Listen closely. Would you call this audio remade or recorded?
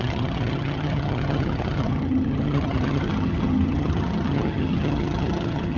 remade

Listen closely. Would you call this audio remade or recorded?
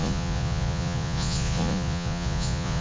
remade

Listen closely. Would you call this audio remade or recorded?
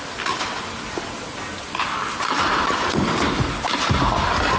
recorded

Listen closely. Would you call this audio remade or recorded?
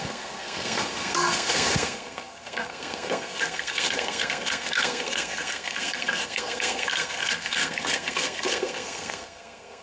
remade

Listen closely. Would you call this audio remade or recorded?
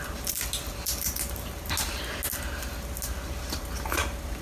recorded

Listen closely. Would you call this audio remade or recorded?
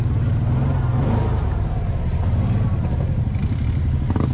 recorded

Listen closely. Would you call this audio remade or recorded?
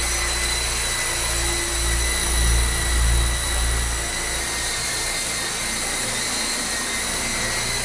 recorded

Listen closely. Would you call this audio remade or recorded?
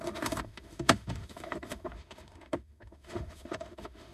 remade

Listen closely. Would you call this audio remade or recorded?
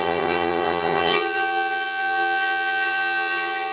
remade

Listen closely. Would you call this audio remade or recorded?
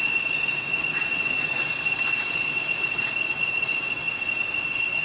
remade